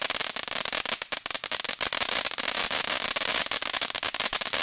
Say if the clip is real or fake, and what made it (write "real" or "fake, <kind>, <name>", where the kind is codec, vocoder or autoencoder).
real